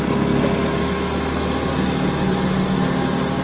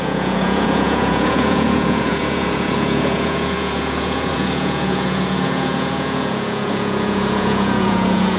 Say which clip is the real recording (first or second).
first